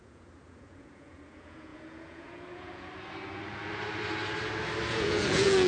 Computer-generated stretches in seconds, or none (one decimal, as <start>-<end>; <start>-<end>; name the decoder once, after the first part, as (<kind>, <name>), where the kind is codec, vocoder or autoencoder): 0.0-2.9 (vocoder, Vocos); 4.9-5.7

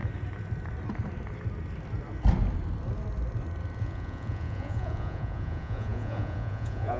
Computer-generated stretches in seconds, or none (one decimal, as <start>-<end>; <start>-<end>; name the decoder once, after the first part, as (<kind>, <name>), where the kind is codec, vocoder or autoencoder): 3.8-7.0 (vocoder, Vocos)

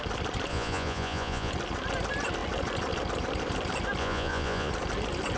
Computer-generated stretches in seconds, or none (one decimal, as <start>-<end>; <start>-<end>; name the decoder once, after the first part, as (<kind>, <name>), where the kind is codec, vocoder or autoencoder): 0.5-1.5 (vocoder, Vocos); 4.0-4.7

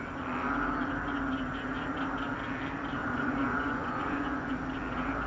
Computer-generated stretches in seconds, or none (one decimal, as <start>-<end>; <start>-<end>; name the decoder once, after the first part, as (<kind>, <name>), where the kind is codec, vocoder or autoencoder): 3.0-4.5 (vocoder, Vocos)